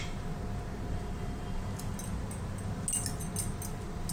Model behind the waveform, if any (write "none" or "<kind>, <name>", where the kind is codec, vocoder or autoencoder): none